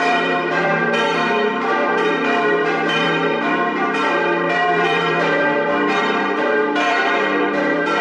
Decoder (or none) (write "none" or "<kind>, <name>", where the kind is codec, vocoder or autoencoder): vocoder, BigVGAN v2